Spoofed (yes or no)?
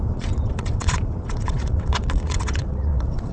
yes